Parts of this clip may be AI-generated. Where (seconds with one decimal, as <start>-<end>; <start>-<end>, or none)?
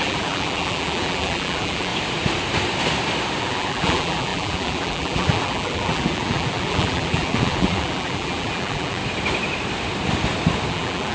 0.0-1.9; 3.4-9.0; 10.7-11.1